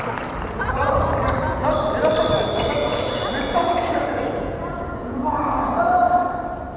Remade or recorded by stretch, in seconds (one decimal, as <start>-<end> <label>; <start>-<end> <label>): 0.0-2.8 recorded; 2.8-5.8 remade; 5.8-6.8 recorded